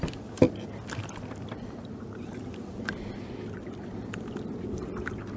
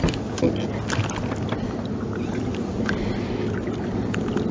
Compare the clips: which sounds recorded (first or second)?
second